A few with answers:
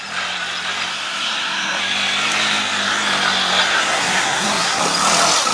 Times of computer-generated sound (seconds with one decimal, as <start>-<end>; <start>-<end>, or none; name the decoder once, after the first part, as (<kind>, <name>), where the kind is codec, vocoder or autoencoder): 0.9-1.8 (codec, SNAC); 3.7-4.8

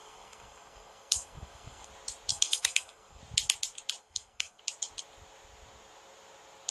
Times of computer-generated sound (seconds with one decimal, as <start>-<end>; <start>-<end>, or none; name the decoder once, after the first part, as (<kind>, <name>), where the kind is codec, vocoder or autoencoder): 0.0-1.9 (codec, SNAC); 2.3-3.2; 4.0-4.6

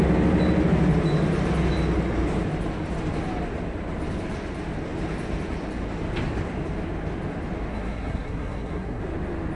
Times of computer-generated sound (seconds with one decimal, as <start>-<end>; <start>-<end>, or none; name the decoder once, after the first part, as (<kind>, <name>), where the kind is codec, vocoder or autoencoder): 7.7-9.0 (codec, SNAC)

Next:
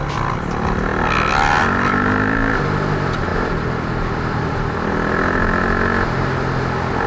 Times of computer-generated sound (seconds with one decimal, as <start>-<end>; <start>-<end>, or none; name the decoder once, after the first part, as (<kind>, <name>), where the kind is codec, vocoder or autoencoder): none

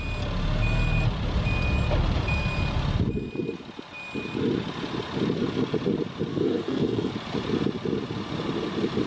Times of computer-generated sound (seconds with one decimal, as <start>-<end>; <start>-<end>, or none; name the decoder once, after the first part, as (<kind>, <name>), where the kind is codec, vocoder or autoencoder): 6.3-7.1 (codec, SNAC)

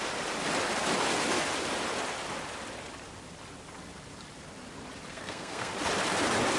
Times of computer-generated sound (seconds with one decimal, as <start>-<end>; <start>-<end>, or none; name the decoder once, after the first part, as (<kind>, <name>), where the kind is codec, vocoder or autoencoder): 5.1-5.7 (codec, SNAC)